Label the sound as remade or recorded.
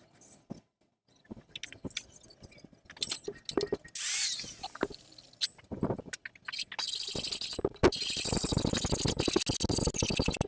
recorded